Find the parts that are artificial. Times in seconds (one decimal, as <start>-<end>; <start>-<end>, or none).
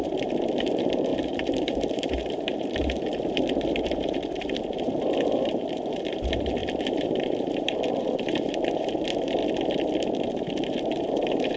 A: 0.0-9.4; 10.5-11.6